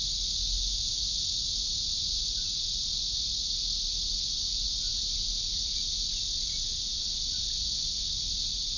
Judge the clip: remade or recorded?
recorded